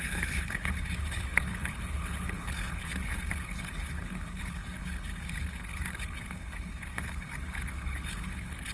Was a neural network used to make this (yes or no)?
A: yes